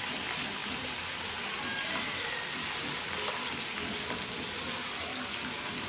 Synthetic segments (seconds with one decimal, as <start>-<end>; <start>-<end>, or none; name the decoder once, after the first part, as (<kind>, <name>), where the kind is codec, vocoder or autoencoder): none